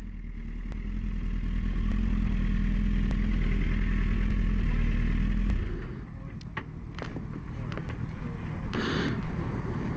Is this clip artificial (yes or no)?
no